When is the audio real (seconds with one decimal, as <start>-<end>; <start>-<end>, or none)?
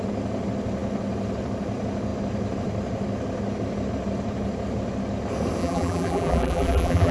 0.0-5.6